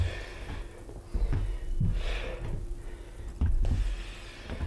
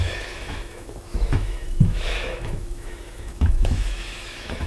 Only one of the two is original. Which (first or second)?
first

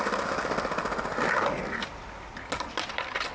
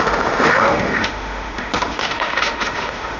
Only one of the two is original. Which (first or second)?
first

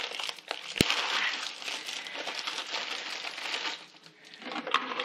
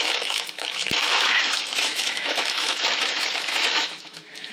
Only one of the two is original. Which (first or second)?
first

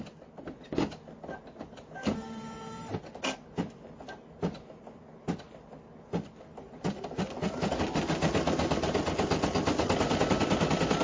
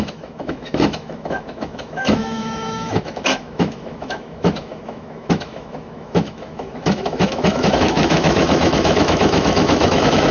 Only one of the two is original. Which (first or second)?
first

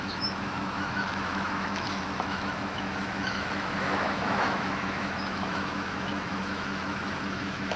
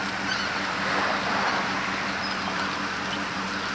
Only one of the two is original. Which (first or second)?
second